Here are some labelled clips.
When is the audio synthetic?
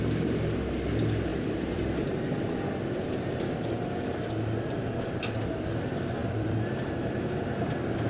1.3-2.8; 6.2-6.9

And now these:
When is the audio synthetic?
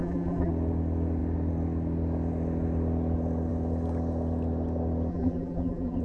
0.0-0.5; 5.1-6.0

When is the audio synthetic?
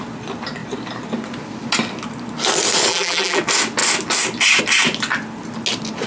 2.9-3.4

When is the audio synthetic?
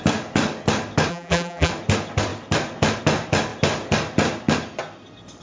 1.1-1.7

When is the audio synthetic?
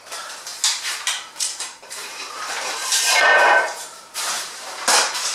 0.0-5.3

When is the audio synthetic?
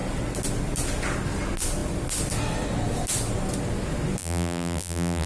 4.2-5.3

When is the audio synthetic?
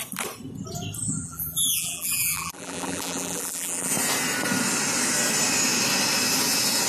1.2-3.9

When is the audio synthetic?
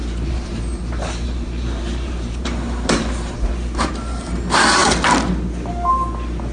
0.0-3.9